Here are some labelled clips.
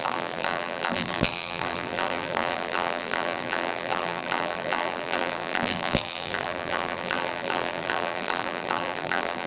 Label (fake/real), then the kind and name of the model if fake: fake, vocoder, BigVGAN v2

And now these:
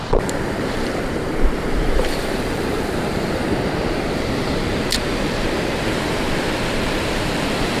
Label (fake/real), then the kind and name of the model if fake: fake, vocoder, BigVGAN v2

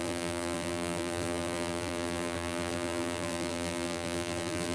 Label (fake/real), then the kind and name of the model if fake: fake, vocoder, BigVGAN v2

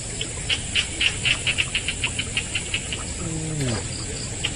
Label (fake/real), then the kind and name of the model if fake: real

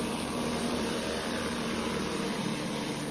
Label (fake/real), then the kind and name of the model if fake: fake, vocoder, BigVGAN v2